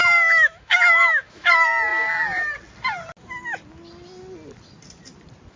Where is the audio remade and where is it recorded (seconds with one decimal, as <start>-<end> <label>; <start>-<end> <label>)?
0.0-1.5 remade; 1.5-5.6 recorded